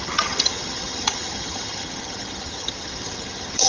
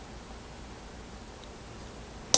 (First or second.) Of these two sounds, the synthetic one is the first